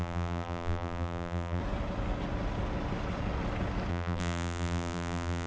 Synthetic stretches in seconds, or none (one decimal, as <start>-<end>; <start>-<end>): 0.0-1.6; 3.9-5.5